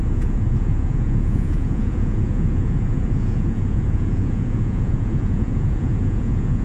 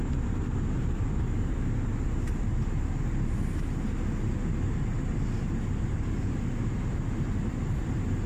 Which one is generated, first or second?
first